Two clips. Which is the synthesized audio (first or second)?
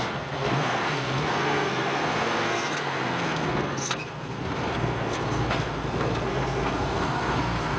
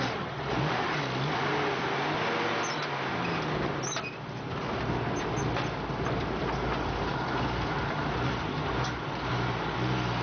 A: first